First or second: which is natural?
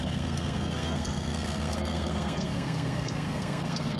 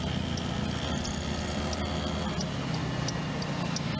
second